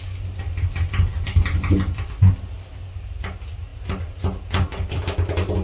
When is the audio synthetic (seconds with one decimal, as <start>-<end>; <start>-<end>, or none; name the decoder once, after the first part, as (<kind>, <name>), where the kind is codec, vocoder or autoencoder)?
none